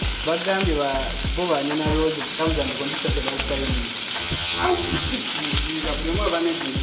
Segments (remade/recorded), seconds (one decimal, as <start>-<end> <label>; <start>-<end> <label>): 0.0-4.2 recorded; 4.2-5.1 remade; 5.1-6.8 recorded